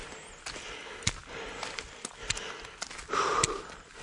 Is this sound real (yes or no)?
yes